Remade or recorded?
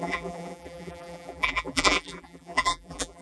remade